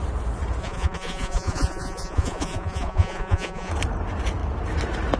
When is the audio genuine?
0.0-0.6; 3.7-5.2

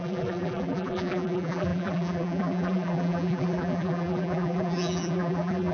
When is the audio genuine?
none

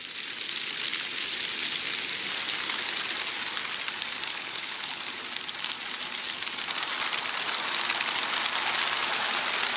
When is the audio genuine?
0.0-4.3; 5.0-9.8